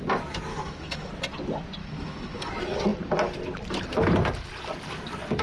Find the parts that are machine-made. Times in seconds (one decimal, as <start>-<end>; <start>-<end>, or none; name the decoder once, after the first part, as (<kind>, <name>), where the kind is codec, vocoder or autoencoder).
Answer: 0.5-1.1 (autoencoder, DAC-VAE); 1.8-2.5